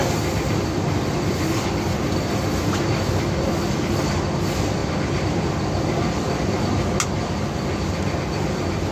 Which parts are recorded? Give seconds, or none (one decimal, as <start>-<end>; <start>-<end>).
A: 0.0-8.9

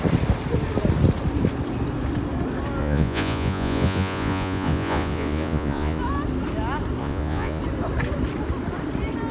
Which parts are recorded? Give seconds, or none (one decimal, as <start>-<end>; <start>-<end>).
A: 0.0-2.8; 6.0-7.0; 7.6-9.3

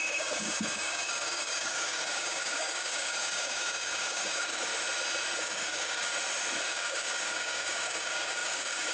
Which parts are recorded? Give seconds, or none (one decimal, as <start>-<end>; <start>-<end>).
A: 4.7-5.4; 6.1-6.6

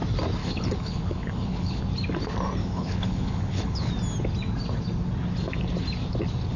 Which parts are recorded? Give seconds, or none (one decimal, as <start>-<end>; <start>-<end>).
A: 0.0-0.4; 1.8-2.6; 3.9-6.6